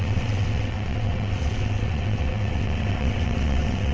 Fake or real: fake